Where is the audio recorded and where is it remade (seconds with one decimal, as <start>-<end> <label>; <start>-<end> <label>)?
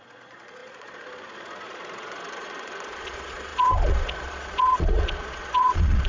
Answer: 0.0-6.1 remade